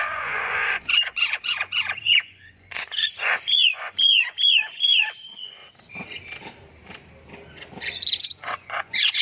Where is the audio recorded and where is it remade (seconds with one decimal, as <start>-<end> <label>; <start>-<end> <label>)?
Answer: 0.0-5.6 remade; 5.6-8.2 recorded; 8.2-9.2 remade